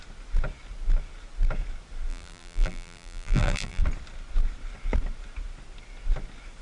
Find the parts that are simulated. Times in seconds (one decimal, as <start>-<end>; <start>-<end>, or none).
2.1-3.8